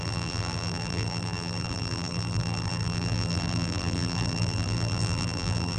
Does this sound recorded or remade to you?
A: remade